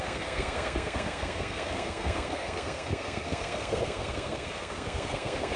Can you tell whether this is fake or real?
fake